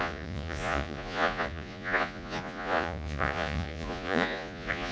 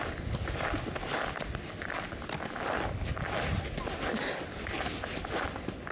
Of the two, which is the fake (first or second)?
first